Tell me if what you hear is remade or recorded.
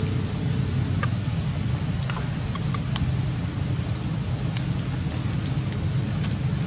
recorded